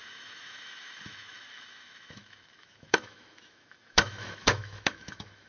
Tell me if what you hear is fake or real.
fake